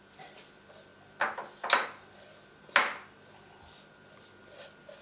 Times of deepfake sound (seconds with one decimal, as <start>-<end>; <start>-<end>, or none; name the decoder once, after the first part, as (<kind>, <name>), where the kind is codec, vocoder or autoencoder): none